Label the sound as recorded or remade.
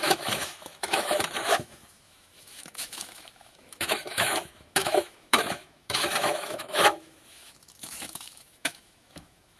remade